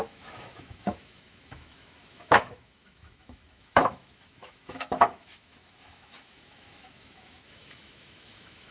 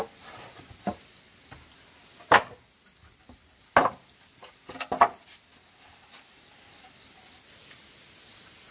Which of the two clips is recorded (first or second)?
second